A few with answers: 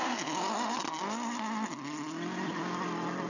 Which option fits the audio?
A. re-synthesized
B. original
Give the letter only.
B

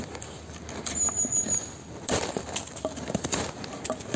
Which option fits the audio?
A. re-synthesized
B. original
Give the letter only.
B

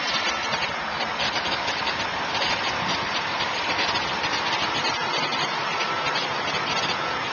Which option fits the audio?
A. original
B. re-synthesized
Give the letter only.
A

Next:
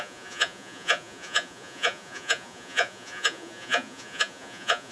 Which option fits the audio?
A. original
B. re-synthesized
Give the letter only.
B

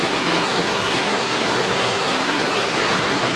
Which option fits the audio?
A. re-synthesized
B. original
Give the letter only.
A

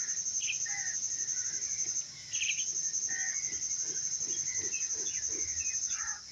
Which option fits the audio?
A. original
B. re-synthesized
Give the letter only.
A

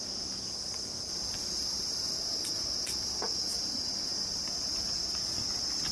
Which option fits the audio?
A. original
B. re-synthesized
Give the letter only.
A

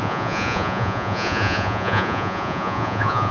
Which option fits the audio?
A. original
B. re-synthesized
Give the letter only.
B